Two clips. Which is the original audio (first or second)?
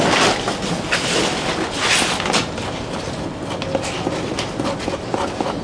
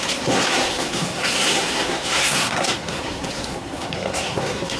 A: first